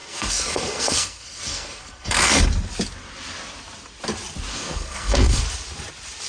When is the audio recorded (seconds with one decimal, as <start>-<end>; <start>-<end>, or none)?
2.4-4.5; 5.4-6.3